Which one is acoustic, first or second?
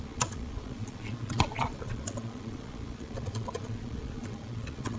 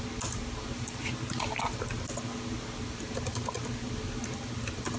second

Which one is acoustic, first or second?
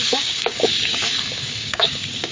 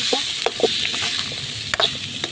second